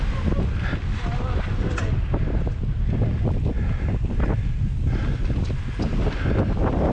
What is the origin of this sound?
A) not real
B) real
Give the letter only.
B